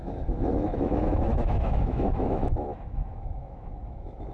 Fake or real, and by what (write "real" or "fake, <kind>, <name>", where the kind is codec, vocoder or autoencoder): fake, autoencoder, DAC-VAE